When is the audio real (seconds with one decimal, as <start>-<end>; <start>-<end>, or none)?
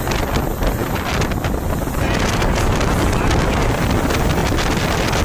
0.0-0.8; 2.8-4.4